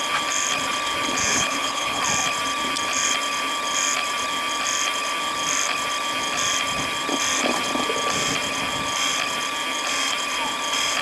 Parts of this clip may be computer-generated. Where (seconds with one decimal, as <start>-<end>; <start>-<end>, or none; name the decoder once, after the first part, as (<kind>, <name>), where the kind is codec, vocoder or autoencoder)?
1.2-2.0 (codec, HILCodec)